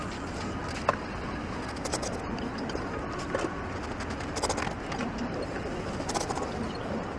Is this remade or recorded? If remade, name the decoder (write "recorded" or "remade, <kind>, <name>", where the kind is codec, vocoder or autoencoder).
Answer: recorded